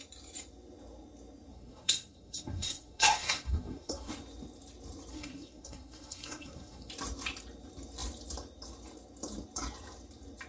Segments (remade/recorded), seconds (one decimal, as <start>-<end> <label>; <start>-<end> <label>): 0.0-1.5 recorded; 1.5-4.1 remade; 4.1-5.1 recorded; 5.1-6.9 remade; 6.9-10.5 recorded